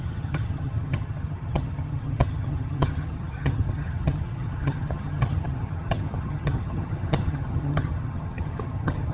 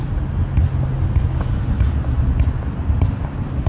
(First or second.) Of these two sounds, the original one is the second